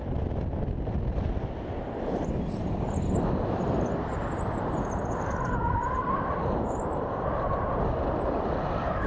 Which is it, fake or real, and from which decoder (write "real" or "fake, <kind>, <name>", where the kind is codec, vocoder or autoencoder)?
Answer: real